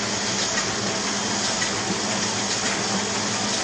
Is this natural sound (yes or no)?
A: yes